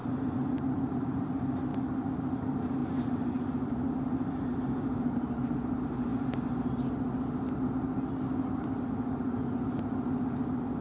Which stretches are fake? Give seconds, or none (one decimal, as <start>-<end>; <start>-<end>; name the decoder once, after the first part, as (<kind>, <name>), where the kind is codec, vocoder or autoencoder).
0.0-1.7 (vocoder, BigVGAN v2); 2.4-2.8; 3.7-6.1